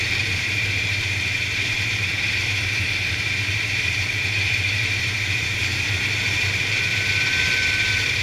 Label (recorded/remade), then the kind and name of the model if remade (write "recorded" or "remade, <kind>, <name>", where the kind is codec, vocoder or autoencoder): remade, vocoder, BigVGAN v2